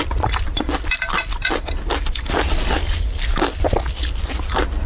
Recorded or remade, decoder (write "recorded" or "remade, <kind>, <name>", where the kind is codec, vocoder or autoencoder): recorded